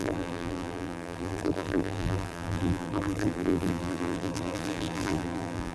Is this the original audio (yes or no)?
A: no